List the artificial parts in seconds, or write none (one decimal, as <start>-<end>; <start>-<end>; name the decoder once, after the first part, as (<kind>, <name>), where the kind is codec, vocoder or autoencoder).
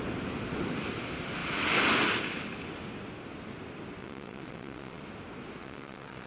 4.0-5.0 (vocoder, WaveNeXt); 5.6-6.3